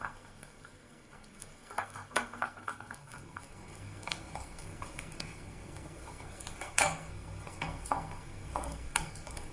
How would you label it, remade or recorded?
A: remade